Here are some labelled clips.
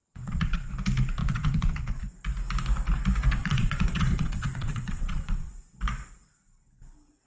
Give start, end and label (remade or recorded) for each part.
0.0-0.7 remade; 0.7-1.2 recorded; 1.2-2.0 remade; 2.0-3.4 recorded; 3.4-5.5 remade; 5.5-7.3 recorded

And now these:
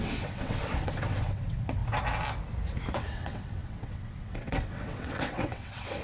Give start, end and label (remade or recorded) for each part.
0.0-1.8 remade; 1.8-2.9 recorded; 2.9-6.0 remade

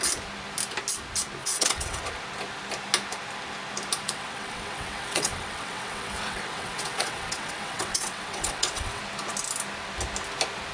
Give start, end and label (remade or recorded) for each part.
0.0-1.4 recorded; 1.4-2.0 remade; 2.0-4.0 recorded; 4.0-9.0 remade; 9.0-10.7 recorded

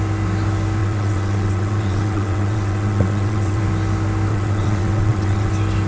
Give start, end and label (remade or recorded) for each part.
0.0-0.8 recorded; 0.8-3.6 remade; 3.6-4.3 recorded; 4.3-5.5 remade; 5.5-5.9 recorded

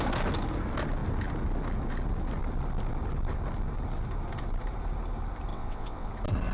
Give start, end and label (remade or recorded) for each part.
0.0-5.5 recorded; 5.5-6.1 remade; 6.1-6.5 recorded

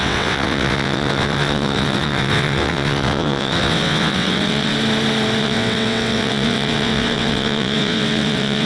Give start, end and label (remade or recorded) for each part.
0.0-4.7 remade; 4.7-5.4 recorded; 5.4-8.7 remade